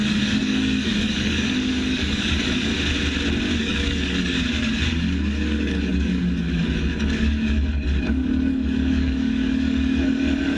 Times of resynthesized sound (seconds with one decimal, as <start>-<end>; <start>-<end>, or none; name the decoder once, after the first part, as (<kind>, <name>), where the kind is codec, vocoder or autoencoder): 0.0-2.7 (codec, DAC); 3.6-10.6